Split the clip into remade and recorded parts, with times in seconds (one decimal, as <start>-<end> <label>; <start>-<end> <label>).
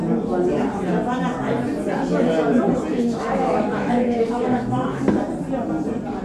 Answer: 0.0-2.9 recorded; 2.9-5.0 remade; 5.0-6.2 recorded